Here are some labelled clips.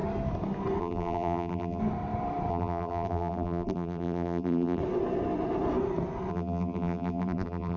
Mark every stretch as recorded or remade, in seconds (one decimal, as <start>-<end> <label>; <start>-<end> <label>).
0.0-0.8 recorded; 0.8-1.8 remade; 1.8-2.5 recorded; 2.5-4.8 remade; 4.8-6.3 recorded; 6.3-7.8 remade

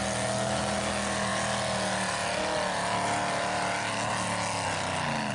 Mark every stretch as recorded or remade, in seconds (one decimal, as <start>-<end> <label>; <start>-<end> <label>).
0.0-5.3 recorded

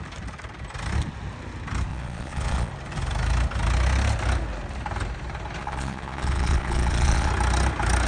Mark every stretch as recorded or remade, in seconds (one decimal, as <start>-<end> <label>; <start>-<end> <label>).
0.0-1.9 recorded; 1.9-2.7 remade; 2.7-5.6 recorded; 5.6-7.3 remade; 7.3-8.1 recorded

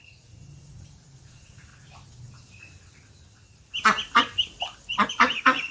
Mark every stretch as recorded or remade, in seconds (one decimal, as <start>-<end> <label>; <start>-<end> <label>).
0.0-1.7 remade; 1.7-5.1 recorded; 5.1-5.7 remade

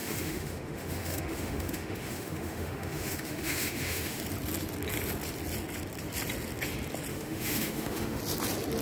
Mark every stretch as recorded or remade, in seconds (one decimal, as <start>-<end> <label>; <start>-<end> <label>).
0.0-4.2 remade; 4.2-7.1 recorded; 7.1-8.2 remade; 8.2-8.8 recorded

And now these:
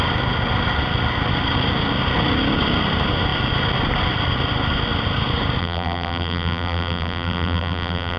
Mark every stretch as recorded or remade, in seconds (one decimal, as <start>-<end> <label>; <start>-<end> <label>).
0.0-5.6 recorded; 5.6-8.2 remade

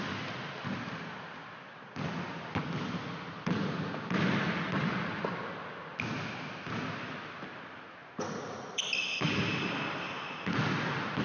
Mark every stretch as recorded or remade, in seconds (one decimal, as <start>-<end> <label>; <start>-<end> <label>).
0.0-11.2 recorded